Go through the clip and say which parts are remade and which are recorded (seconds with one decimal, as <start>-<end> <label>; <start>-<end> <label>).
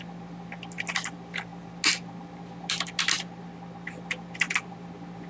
0.0-5.3 recorded